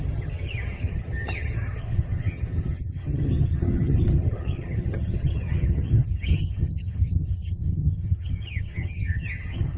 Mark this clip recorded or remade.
remade